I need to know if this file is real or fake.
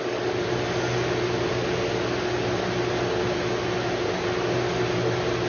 real